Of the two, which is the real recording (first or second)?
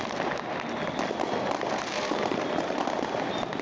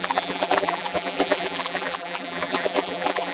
first